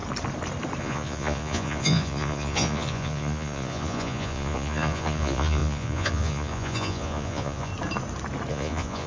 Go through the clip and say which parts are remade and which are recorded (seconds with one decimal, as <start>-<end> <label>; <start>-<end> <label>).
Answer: 0.0-0.8 recorded; 0.8-7.7 remade; 7.7-8.5 recorded; 8.5-9.1 remade